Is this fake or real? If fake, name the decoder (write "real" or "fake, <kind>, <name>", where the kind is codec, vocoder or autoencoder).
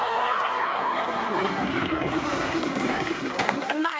fake, codec, SNAC